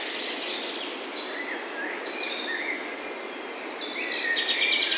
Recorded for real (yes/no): yes